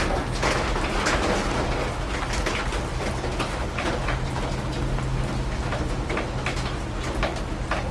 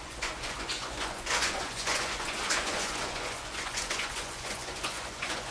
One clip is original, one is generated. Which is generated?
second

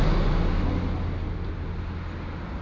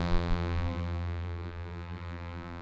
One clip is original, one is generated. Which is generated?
second